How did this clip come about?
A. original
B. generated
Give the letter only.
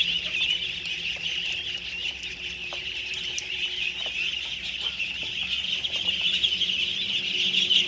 A